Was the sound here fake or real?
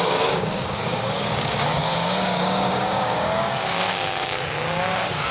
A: fake